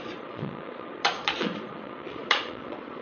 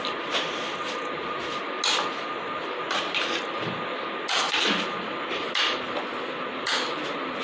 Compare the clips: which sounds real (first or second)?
second